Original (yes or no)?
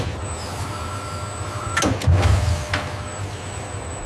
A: yes